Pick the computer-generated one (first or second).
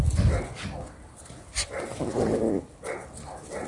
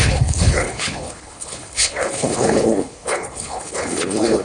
second